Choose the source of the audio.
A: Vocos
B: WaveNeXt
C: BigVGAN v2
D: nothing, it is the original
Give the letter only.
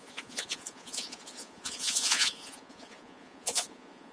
A